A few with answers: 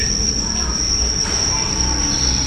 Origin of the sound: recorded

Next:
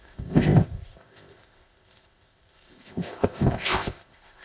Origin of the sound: remade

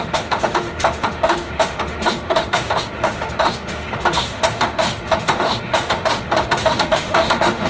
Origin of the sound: remade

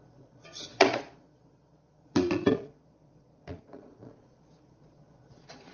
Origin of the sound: remade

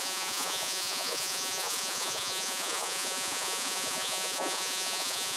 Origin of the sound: remade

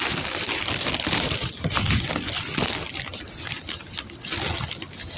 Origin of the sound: recorded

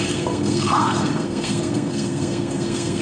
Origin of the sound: remade